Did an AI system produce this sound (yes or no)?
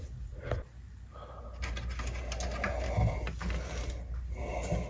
no